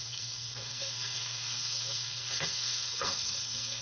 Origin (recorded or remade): remade